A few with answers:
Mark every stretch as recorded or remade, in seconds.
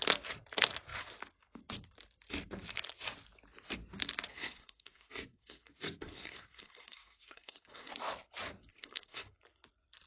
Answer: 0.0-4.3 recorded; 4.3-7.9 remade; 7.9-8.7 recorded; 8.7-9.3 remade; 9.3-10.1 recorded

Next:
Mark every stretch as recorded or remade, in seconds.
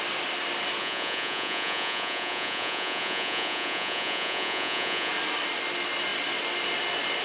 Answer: 0.0-0.8 recorded; 0.8-5.1 remade; 5.1-7.2 recorded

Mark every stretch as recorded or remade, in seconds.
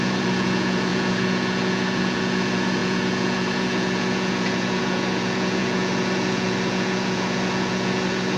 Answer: 0.0-8.4 remade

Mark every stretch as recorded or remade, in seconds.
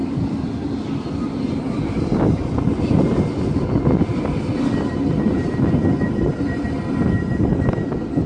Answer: 0.0-8.3 recorded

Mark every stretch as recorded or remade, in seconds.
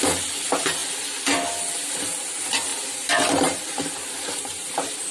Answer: 0.0-2.7 recorded; 2.7-3.9 remade; 3.9-4.5 recorded; 4.5-5.1 remade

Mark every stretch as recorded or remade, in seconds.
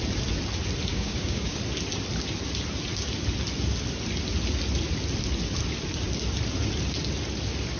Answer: 0.0-0.9 recorded; 0.9-1.6 remade; 1.6-7.8 recorded